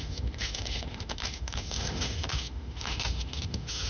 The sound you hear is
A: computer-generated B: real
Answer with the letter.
A